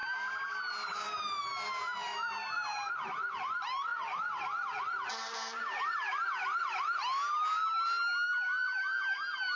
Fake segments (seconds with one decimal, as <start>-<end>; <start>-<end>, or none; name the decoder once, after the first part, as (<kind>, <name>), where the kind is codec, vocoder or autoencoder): 2.1-3.4 (vocoder, BigVGAN v2); 8.5-9.2

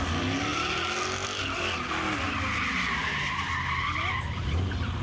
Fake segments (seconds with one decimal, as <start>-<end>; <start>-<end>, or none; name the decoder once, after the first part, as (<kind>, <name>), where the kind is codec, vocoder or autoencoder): none

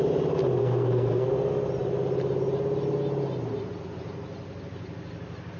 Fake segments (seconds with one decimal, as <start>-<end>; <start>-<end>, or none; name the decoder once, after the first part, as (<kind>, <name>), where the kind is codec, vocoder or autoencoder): 0.6-1.3 (codec, SNAC)

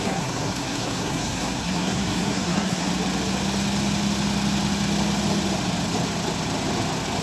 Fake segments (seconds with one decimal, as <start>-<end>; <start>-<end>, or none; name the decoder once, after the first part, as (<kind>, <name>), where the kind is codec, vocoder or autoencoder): 0.0-2.9 (codec, SNAC)

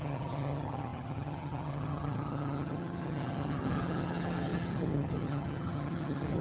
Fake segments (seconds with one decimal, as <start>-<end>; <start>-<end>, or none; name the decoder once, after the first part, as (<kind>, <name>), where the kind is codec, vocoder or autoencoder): 0.0-6.4 (vocoder, HiFi-GAN)

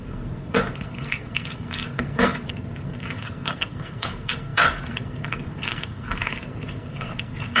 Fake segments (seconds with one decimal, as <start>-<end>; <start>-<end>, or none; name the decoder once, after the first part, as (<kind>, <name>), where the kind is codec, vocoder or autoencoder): 0.0-7.6 (codec, SNAC)

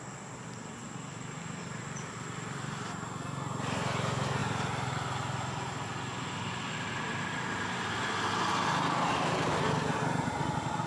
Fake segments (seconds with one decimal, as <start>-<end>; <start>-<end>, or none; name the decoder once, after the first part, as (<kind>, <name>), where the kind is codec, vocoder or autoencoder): none